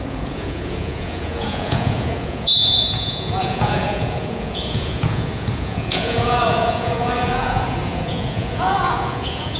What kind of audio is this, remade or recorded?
remade